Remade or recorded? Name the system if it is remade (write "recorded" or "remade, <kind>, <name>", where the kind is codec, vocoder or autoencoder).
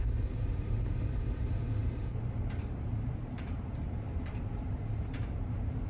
remade, vocoder, BigVGAN v2